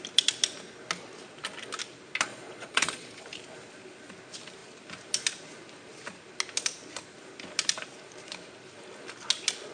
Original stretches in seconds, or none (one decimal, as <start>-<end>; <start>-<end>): 0.0-2.3; 3.2-9.7